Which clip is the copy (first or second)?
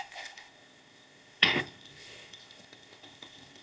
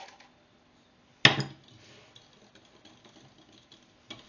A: first